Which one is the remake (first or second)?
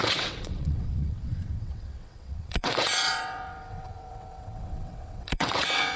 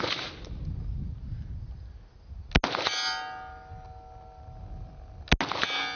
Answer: first